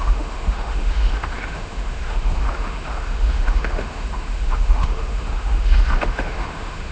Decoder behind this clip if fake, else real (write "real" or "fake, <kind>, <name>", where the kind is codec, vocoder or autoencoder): fake, autoencoder, DAC-VAE